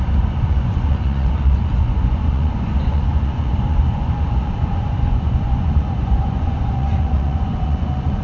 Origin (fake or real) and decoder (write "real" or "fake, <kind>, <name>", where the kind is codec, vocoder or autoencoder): fake, vocoder, Vocos